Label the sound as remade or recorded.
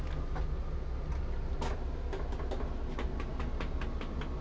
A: recorded